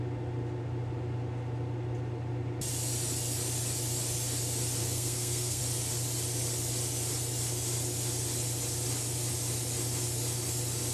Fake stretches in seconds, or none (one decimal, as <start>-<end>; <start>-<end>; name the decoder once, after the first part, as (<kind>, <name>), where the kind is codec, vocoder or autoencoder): 4.8-5.6 (codec, SNAC)